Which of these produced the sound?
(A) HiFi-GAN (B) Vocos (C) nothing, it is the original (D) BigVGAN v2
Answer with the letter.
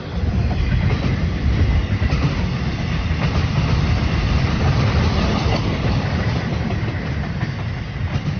D